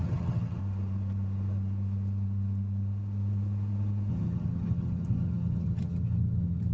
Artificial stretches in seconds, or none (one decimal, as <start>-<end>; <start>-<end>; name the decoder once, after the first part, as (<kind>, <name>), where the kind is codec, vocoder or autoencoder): 0.0-0.6 (vocoder, HiFi-GAN); 4.1-6.7